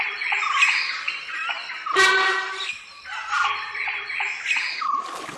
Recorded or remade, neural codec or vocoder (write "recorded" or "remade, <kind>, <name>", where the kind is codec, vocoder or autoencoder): recorded